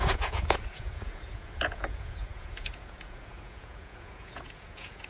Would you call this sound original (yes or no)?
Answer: no